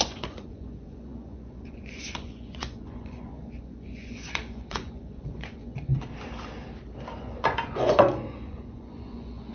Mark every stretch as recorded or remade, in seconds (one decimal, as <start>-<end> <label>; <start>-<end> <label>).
0.0-5.9 remade; 5.9-7.2 recorded; 7.2-9.5 remade